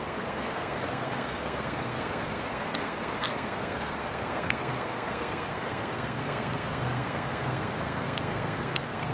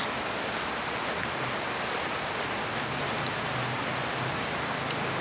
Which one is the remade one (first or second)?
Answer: first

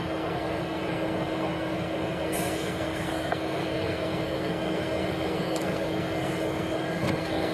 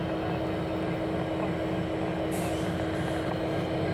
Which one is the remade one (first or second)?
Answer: first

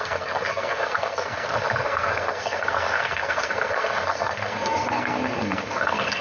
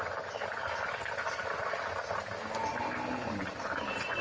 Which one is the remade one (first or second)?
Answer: first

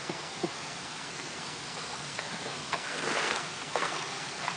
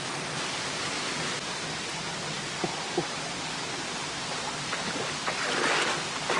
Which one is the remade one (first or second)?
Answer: first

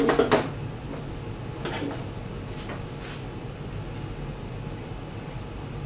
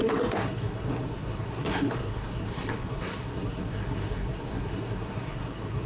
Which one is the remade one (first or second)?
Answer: second